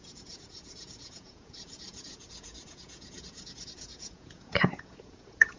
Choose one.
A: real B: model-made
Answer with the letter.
B